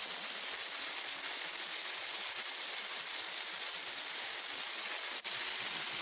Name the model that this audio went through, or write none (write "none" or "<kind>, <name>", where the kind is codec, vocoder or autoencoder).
none